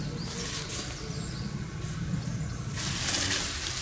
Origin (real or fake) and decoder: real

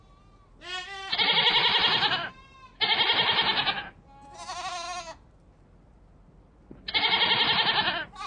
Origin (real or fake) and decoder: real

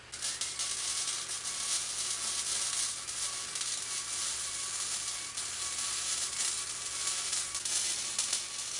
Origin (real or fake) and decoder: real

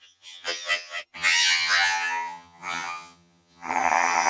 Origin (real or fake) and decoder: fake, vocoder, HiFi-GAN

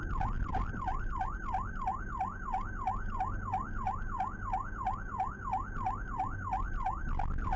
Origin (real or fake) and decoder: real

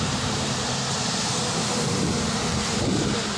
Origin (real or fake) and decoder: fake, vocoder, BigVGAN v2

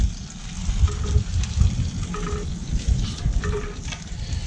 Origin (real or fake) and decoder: real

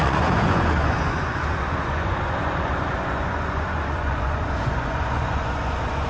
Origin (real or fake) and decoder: fake, vocoder, Vocos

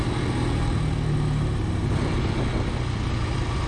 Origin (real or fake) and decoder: real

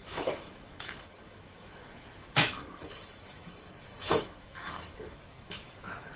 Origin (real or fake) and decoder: fake, autoencoder, DAC-VAE